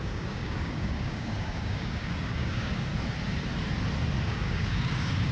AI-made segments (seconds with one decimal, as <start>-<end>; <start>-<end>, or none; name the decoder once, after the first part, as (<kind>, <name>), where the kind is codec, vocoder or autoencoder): 0.0-2.9 (codec, DAC); 4.2-5.3